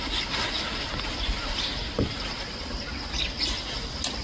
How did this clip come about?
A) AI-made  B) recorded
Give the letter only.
B